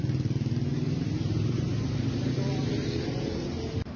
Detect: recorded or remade recorded